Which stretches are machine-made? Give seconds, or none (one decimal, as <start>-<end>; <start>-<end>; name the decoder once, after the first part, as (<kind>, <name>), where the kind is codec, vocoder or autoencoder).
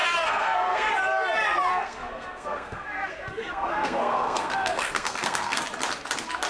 0.0-0.9 (codec, SNAC); 1.7-5.6